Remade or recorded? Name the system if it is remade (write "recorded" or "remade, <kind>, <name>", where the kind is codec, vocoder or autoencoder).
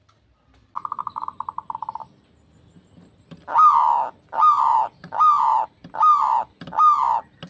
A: recorded